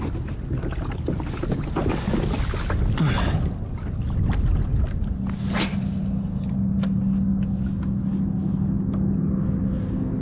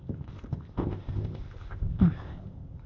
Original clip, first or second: first